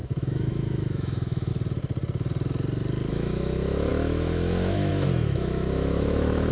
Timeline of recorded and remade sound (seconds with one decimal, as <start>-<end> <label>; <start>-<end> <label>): 0.0-1.5 remade; 1.5-3.1 recorded; 3.1-6.5 remade